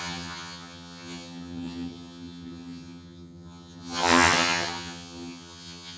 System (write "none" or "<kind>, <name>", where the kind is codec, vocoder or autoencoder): vocoder, HiFi-GAN